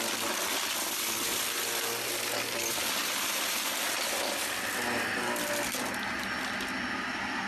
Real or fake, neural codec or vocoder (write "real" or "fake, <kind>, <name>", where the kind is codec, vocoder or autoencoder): real